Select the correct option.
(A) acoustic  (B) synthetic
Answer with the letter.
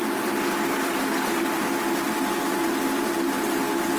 A